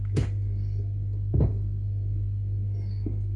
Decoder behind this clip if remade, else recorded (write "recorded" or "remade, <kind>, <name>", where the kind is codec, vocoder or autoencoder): remade, codec, SNAC